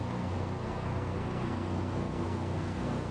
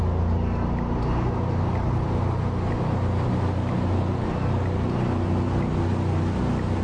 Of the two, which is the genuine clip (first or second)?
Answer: second